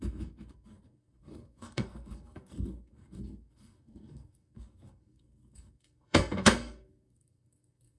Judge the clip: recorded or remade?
remade